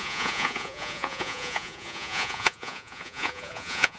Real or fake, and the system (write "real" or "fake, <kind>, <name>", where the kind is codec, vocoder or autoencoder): fake, vocoder, Vocos